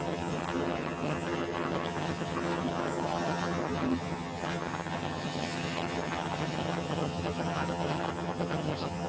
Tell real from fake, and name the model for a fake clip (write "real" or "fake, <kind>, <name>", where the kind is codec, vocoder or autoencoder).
fake, vocoder, HiFi-GAN